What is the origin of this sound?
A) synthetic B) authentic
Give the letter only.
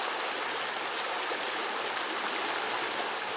B